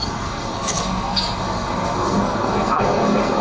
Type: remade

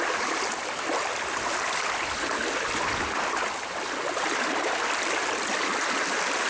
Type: recorded